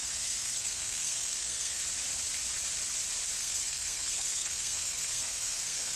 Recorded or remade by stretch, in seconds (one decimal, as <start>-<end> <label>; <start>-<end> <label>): 0.0-1.8 remade; 1.8-3.4 recorded; 3.4-6.0 remade